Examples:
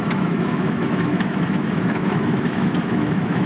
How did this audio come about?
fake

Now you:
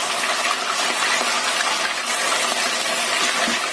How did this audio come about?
real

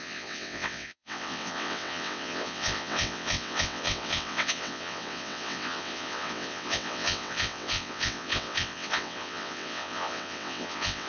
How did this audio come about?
fake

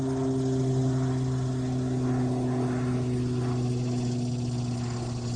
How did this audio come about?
real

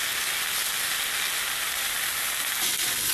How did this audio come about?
real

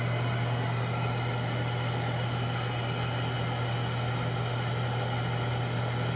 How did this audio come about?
real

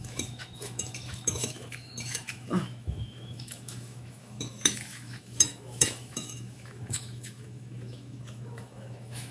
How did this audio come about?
fake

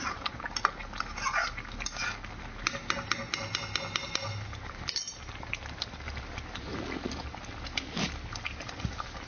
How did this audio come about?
real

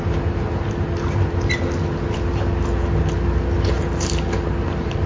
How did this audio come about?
real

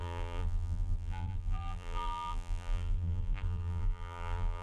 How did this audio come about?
fake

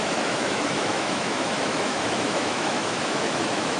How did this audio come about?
fake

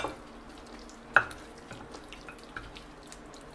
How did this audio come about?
real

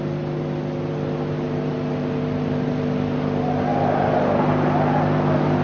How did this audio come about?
real